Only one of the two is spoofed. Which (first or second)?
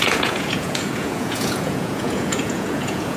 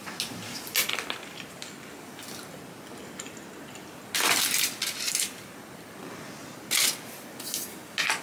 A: first